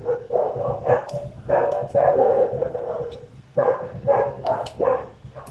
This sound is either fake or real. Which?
fake